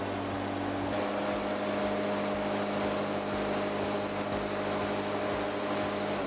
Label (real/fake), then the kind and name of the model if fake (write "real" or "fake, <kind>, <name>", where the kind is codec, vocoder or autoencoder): real